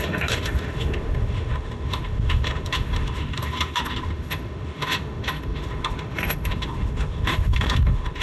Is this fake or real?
fake